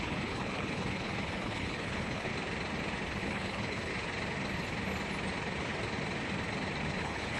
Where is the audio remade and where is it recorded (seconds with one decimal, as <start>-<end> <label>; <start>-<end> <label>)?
0.0-2.3 remade; 2.3-3.2 recorded; 3.2-3.9 remade; 3.9-7.0 recorded; 7.0-7.4 remade